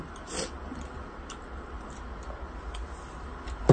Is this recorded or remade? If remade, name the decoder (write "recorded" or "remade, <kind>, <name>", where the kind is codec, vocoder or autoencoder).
recorded